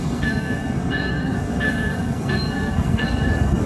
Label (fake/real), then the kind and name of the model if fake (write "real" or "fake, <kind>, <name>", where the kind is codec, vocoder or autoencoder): fake, codec, SNAC